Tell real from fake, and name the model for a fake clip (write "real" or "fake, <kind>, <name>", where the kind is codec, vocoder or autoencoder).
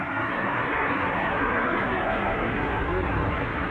fake, codec, SNAC